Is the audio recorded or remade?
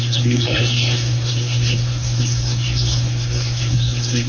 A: remade